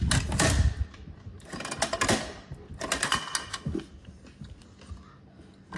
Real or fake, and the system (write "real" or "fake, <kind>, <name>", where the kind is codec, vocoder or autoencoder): real